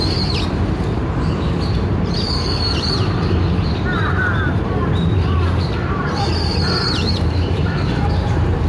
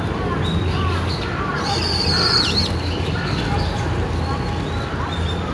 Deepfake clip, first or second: first